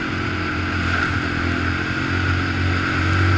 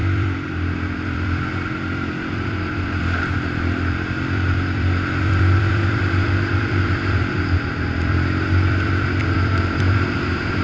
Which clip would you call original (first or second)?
first